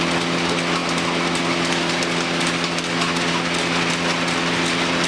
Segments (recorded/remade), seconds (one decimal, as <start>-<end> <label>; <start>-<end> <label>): 0.0-5.1 recorded